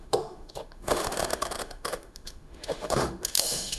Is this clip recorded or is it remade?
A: remade